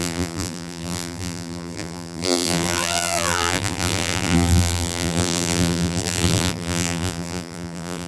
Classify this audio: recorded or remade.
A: remade